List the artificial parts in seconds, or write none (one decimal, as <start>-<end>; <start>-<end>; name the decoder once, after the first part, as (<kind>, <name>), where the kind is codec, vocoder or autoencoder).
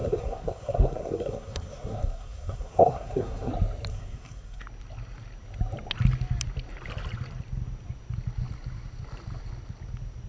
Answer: 0.0-3.5 (codec, SNAC); 3.9-4.6